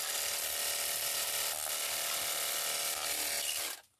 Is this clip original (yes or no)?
yes